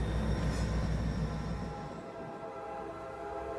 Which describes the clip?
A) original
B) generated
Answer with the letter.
A